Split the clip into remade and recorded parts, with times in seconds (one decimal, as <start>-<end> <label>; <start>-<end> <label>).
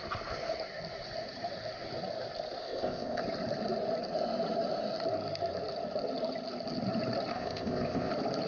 0.0-2.6 recorded; 2.6-3.2 remade; 3.2-7.3 recorded; 7.3-8.1 remade; 8.1-8.5 recorded